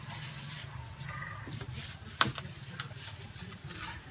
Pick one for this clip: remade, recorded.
recorded